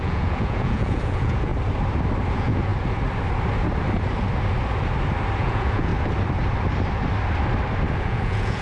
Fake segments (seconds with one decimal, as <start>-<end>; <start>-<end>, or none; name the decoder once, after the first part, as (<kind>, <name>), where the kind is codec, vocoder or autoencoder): 0.0-1.5 (vocoder, Vocos); 2.3-2.7; 5.4-5.9; 8.0-8.6